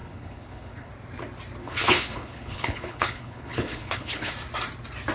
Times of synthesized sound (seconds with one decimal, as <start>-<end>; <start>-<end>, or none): 0.0-0.9; 1.6-4.3